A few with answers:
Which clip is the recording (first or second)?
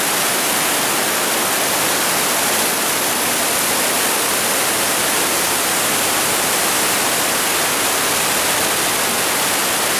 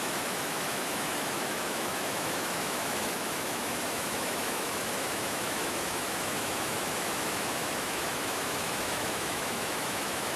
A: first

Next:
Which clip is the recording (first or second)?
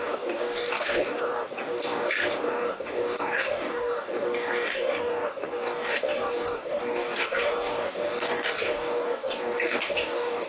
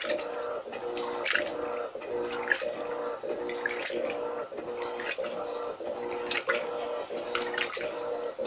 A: second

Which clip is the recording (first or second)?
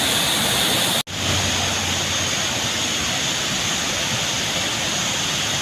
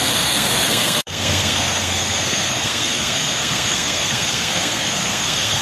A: first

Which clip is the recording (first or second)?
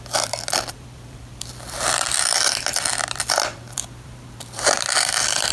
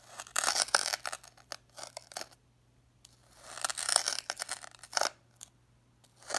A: second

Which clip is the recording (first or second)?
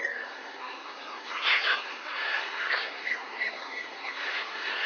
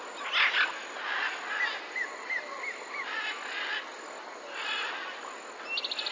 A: second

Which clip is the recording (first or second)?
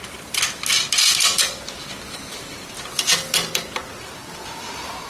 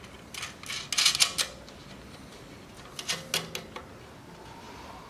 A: second